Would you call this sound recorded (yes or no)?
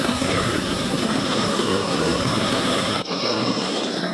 no